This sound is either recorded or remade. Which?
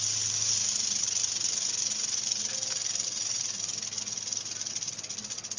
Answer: recorded